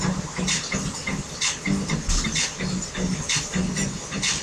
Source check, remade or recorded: recorded